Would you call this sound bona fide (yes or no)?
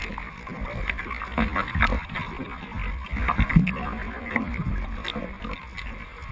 yes